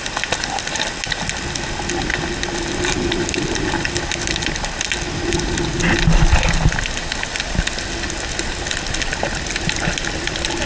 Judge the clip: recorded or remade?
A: recorded